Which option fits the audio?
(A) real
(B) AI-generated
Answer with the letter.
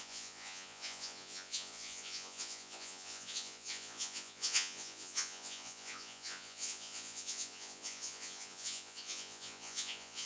B